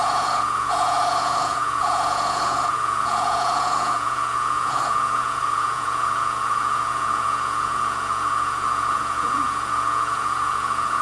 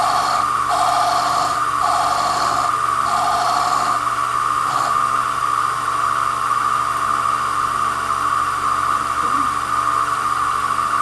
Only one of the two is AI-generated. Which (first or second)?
first